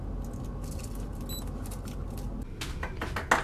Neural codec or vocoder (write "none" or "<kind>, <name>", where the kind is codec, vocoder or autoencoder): none